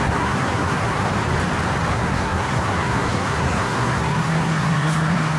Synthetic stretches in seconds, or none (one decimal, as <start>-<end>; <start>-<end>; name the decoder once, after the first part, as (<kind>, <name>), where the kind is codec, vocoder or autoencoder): 0.0-1.1 (codec, SNAC); 1.9-5.4